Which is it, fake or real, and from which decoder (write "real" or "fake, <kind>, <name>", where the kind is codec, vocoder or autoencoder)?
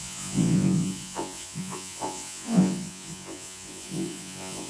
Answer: fake, vocoder, Vocos